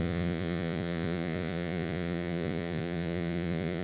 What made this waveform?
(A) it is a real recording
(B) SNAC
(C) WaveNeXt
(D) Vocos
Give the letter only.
D